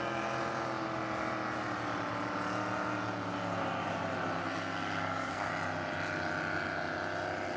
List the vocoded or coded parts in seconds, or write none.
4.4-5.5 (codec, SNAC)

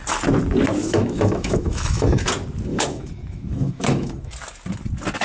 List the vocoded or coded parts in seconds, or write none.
0.8-2.3 (autoencoder, DAC-VAE); 2.7-4.3

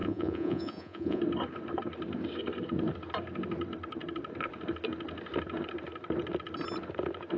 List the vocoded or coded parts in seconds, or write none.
0.0-1.2 (vocoder, Vocos)

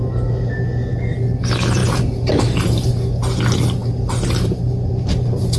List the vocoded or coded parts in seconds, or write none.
1.8-2.9 (vocoder, BigVGAN v2); 3.8-5.6

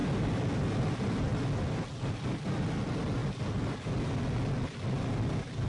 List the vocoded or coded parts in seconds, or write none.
none

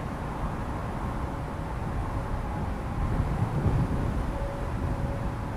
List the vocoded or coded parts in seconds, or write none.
0.8-1.5 (vocoder, BigVGAN v2); 2.0-4.6